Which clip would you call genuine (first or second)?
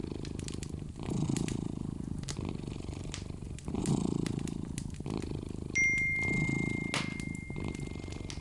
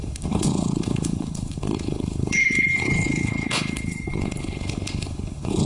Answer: first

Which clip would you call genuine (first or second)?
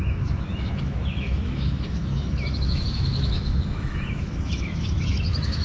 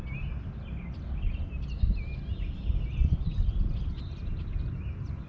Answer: second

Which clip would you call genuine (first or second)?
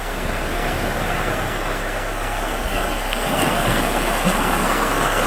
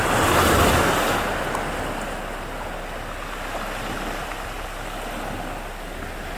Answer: second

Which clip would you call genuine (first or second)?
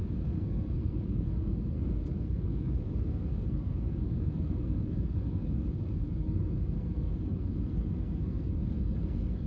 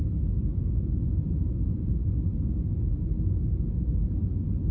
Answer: second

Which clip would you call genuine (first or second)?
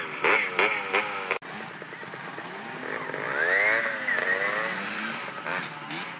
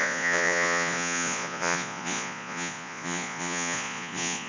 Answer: first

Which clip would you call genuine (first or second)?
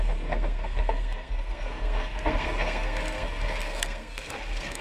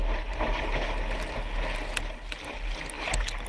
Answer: second